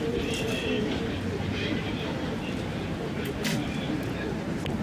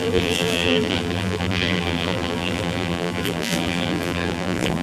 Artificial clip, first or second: second